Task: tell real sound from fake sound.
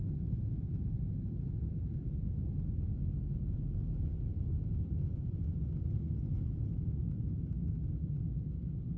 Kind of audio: real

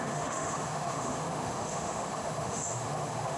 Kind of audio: fake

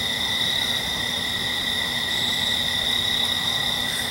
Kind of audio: real